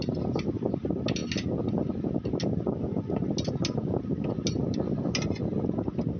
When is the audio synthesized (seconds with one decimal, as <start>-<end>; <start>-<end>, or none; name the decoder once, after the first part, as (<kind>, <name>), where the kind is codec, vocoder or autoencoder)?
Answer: none